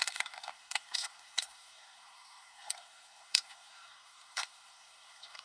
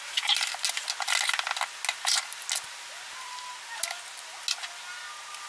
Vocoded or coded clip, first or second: first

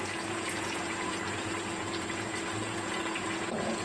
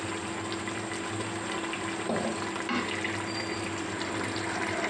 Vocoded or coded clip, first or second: first